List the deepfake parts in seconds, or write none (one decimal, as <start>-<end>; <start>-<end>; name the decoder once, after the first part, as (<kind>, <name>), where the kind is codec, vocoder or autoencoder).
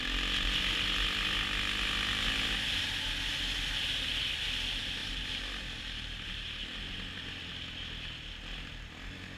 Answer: 2.1-2.7 (vocoder, BigVGAN v2)